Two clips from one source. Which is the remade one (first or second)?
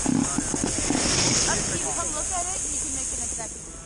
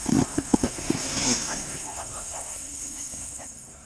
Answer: second